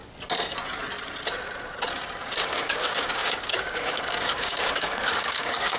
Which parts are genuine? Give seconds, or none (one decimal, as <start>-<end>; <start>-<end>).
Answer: 0.0-2.2